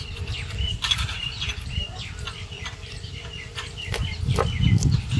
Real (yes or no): no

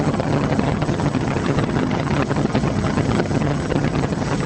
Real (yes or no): no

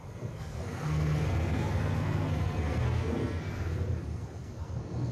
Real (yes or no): no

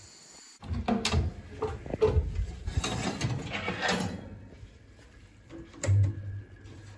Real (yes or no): yes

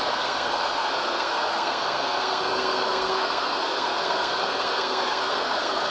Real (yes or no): no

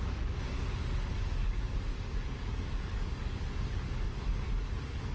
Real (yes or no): no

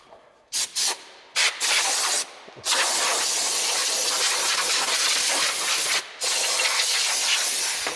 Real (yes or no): no